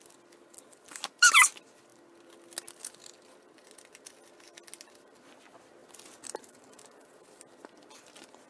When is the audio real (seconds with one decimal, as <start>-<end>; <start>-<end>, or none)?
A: 0.0-8.5